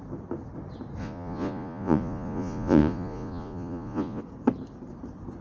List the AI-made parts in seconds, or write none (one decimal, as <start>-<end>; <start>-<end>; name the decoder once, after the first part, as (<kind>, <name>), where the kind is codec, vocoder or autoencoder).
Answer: 1.0-4.2 (vocoder, Vocos)